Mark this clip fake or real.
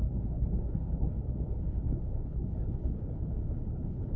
fake